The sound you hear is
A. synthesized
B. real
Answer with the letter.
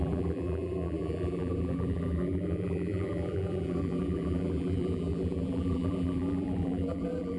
A